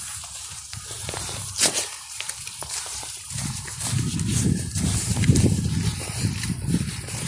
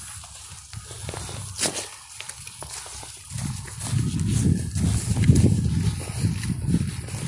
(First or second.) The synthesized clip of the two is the first